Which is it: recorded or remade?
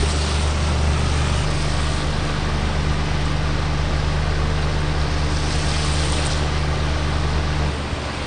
recorded